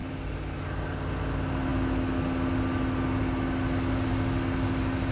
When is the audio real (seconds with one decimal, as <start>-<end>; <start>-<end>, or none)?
0.0-5.1